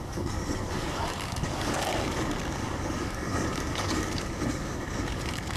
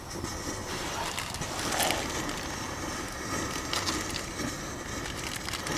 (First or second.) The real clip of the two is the second